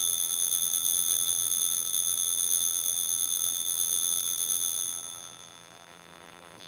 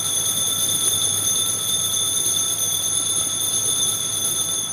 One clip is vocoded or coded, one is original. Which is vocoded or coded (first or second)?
first